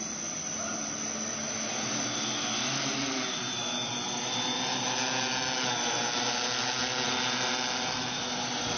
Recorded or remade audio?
recorded